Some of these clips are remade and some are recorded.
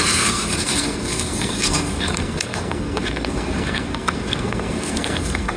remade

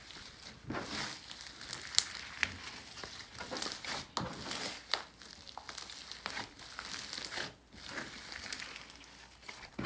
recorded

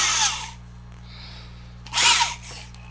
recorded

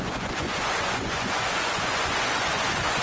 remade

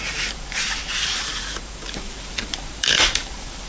remade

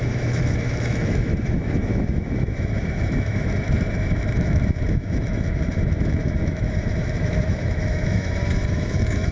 remade